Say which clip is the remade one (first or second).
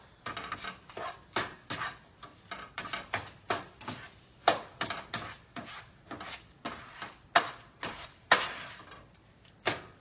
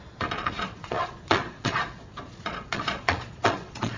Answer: second